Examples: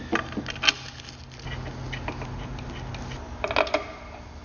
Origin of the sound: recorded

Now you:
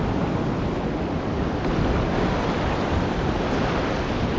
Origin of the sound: recorded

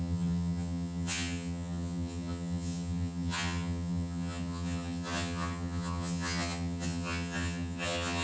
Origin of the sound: remade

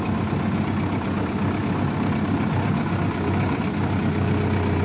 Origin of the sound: recorded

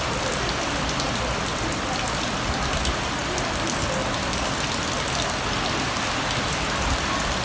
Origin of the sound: recorded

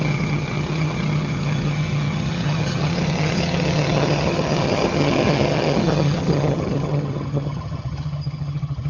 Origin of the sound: remade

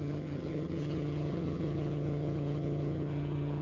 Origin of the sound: remade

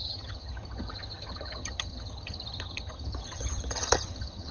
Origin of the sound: remade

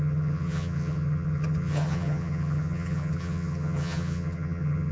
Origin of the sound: remade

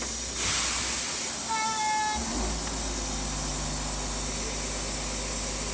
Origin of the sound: recorded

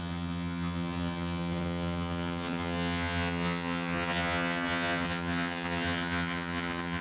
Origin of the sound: remade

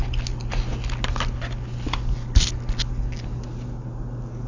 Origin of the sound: recorded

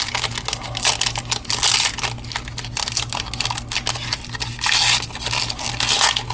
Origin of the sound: recorded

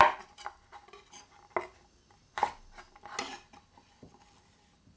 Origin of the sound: recorded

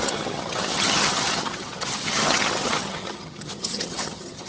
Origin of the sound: remade